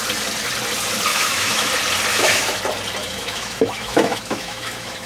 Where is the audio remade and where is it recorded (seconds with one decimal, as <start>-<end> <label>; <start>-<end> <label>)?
0.0-1.1 recorded; 1.1-1.7 remade; 1.7-2.1 recorded; 2.1-2.6 remade; 2.6-3.0 recorded; 3.0-5.1 remade